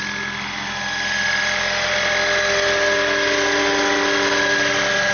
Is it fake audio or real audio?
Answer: real